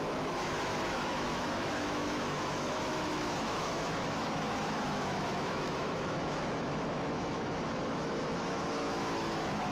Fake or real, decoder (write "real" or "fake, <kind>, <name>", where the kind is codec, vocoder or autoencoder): fake, autoencoder, DAC-VAE